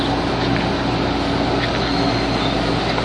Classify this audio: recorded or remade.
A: recorded